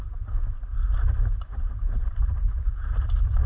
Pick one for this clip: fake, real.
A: real